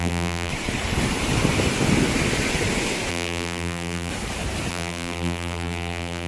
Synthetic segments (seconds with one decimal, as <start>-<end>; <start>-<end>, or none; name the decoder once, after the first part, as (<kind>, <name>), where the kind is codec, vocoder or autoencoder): 0.0-0.5 (vocoder, BigVGAN v2); 3.1-4.1; 4.7-6.3